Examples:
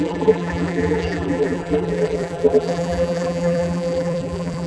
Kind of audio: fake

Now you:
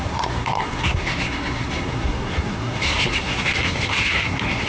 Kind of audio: fake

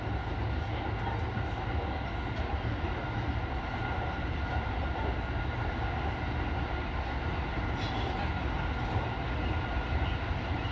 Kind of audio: real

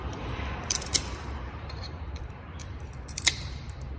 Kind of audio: fake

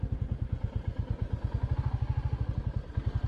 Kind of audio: real